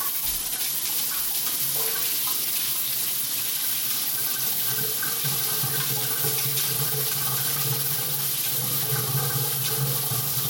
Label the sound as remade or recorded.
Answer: recorded